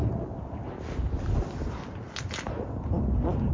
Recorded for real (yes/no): yes